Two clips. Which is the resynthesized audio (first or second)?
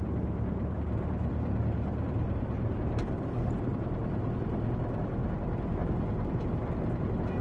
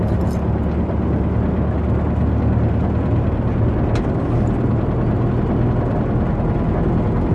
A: first